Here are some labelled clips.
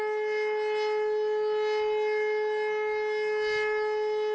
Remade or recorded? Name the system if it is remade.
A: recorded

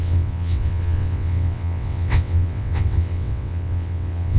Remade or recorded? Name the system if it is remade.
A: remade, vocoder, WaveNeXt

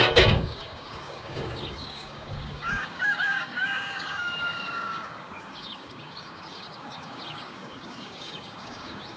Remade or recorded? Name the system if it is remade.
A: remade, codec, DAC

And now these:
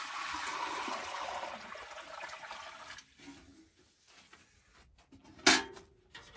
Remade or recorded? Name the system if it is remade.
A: recorded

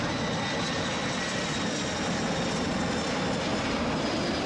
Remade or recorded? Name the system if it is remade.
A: recorded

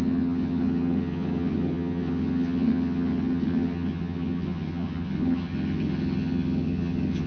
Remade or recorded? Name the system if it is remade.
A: remade, vocoder, HiFi-GAN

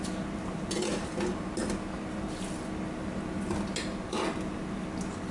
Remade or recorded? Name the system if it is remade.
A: recorded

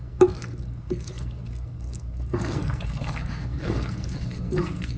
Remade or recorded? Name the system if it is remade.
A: remade, codec, SNAC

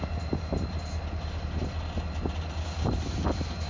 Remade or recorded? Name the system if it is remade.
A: recorded